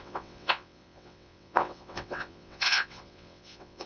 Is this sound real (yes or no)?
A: no